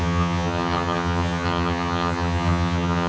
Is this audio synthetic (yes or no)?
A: yes